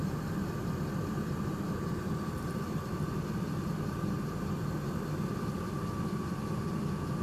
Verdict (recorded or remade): recorded